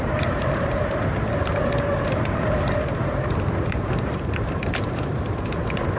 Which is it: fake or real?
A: fake